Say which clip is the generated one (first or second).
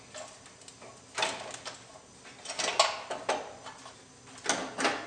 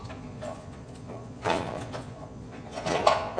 second